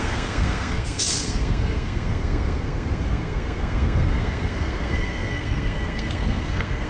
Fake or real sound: fake